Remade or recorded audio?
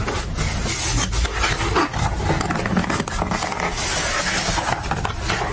recorded